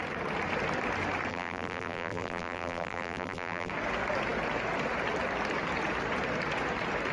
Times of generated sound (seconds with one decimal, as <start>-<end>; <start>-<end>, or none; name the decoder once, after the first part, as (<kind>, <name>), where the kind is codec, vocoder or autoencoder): 1.3-3.7 (vocoder, BigVGAN v2)